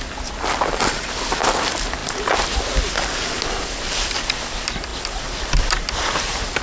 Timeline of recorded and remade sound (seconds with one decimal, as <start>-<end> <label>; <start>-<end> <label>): 0.0-6.6 recorded